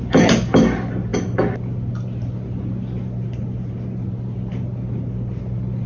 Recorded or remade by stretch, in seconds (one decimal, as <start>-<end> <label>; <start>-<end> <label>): 0.0-5.9 recorded